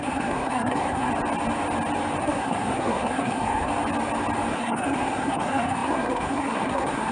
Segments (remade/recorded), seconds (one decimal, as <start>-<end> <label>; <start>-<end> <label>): 0.0-1.1 remade; 1.1-2.2 recorded; 2.2-3.7 remade; 3.7-4.5 recorded; 4.5-7.1 remade